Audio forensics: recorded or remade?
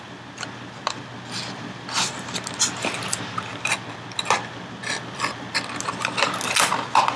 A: recorded